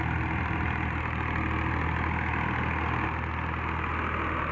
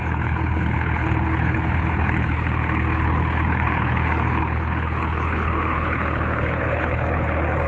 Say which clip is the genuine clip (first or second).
first